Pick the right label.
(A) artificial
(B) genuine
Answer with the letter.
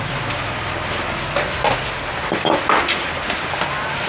B